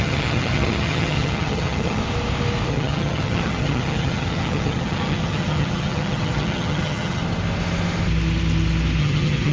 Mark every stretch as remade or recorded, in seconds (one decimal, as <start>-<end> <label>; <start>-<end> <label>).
0.0-2.0 remade; 2.0-2.7 recorded; 2.7-7.2 remade; 7.2-9.0 recorded; 9.0-9.5 remade